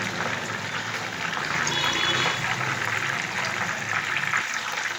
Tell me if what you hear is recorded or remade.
recorded